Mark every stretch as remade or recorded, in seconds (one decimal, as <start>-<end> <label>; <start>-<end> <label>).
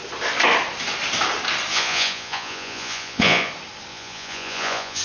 0.0-1.7 recorded; 1.7-3.5 remade; 3.5-3.9 recorded; 3.9-5.0 remade